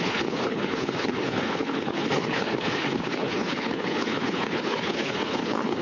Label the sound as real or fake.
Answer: fake